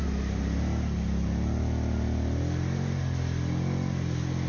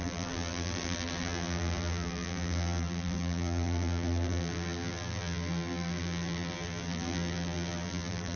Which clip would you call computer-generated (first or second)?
second